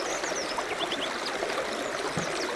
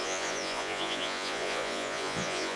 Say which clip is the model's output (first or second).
second